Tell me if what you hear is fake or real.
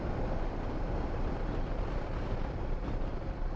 fake